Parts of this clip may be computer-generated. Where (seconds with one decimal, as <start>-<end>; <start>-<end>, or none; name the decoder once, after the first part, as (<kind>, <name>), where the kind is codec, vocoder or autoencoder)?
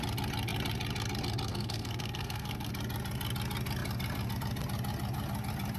1.5-2.7 (codec, SNAC)